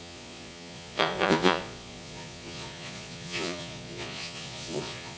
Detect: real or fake fake